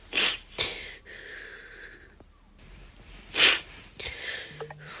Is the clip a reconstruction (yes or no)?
no